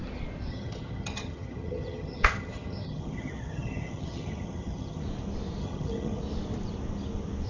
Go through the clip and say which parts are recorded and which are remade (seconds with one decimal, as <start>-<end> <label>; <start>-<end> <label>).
0.0-0.5 recorded; 0.5-5.0 remade; 5.0-5.6 recorded; 5.6-6.2 remade; 6.2-7.5 recorded